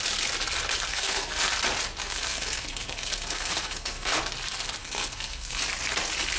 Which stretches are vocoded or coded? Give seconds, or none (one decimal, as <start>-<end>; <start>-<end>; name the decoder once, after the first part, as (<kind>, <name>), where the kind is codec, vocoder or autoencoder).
0.9-1.5 (codec, SNAC); 2.0-4.2; 4.8-5.6